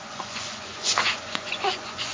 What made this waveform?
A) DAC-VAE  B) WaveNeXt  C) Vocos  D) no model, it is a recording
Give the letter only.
C